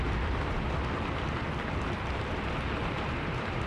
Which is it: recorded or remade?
remade